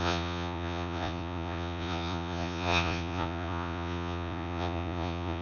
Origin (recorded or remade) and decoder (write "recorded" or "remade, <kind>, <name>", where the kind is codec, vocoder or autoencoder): remade, vocoder, Vocos